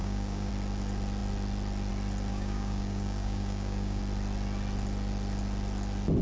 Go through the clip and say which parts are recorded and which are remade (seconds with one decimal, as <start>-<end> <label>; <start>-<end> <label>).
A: 0.0-0.5 remade; 0.5-2.3 recorded; 2.3-4.0 remade; 4.0-6.2 recorded